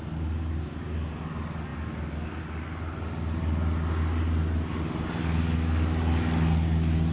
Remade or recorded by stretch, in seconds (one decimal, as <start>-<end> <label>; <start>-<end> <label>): 0.0-7.1 recorded